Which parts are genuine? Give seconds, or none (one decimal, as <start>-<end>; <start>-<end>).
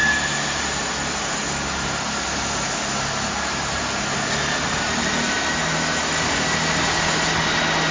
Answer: 0.0-7.9